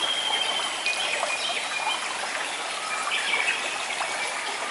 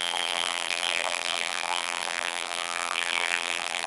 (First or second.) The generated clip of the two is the second